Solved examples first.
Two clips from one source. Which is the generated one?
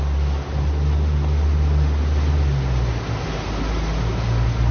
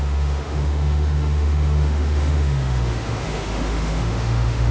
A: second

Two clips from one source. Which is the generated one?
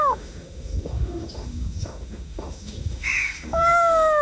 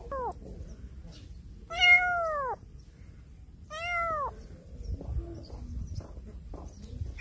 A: first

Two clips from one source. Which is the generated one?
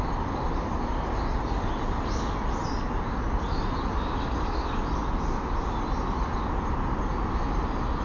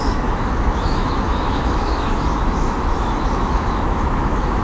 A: second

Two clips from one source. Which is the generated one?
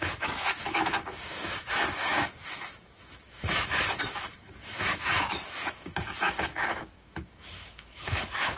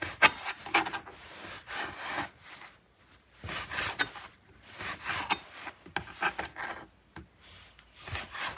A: first